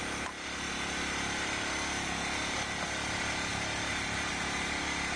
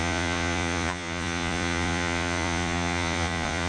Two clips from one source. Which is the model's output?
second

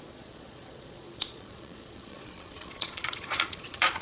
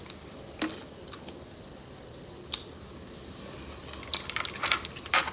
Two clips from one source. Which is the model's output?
first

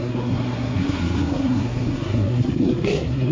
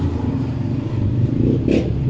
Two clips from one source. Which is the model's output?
first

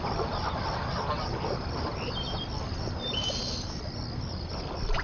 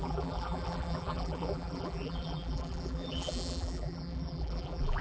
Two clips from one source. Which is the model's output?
second